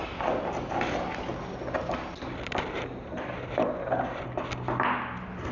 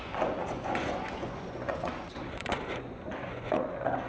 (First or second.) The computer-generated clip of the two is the second